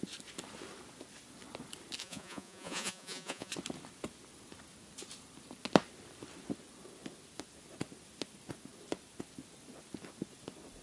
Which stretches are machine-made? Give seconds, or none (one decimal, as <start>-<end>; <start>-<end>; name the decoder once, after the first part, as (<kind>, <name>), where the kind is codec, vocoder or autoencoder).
2.0-3.5 (vocoder, Vocos)